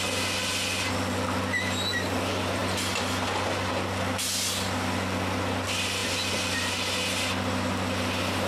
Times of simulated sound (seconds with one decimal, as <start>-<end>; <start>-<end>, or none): none

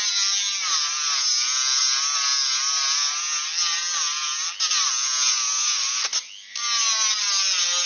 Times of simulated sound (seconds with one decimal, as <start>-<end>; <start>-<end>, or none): none

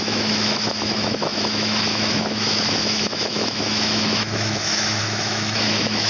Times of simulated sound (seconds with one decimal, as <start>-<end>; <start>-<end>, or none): 0.0-6.1

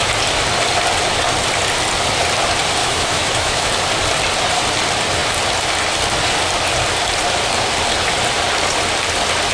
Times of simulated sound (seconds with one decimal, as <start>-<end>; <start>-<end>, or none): 2.8-3.7